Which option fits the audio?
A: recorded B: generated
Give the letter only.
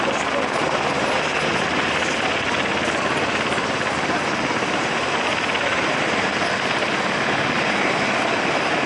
A